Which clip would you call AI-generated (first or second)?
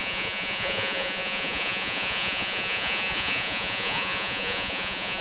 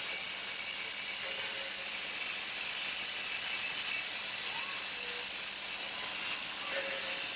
first